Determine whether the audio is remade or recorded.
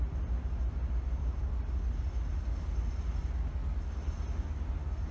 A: recorded